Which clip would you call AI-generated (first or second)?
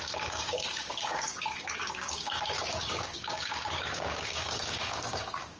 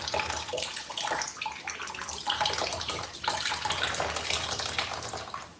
first